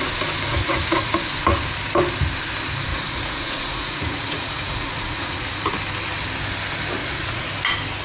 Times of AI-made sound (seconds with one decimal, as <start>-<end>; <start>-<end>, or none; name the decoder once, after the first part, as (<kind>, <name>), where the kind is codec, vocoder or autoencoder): 0.5-1.1 (vocoder, Vocos); 2.9-5.5; 7.0-7.5